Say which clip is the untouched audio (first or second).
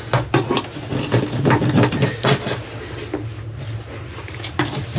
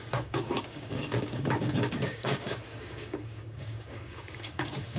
first